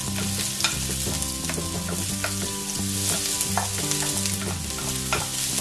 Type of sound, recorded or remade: recorded